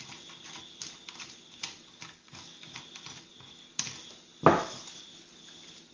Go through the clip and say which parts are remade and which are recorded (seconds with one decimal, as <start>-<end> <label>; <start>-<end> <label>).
0.0-1.9 recorded; 1.9-2.8 remade; 2.8-5.9 recorded